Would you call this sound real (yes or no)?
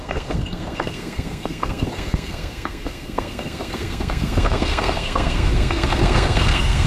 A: no